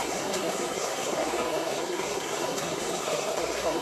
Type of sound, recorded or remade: remade